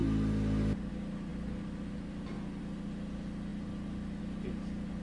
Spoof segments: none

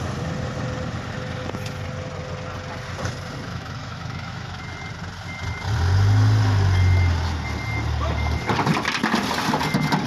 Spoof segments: 3.5-4.6 (autoencoder, DAC-VAE)

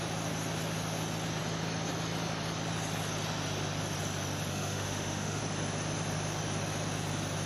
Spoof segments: 4.5-5.4 (autoencoder, DAC-VAE)